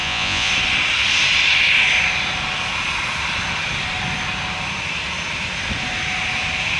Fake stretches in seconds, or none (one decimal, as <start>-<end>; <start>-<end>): 0.0-0.5